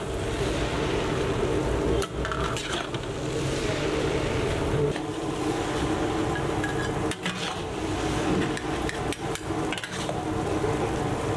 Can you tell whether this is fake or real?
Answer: real